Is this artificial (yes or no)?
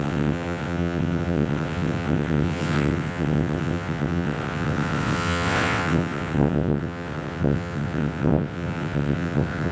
yes